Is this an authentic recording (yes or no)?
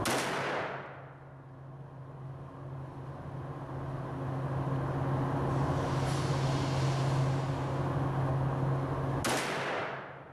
yes